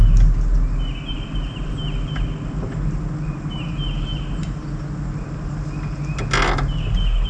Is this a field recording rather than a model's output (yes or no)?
yes